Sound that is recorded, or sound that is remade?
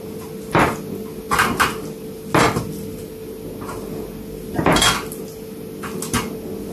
recorded